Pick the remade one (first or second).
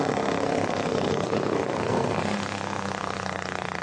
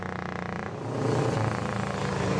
first